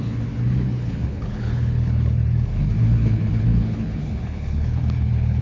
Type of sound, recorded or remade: remade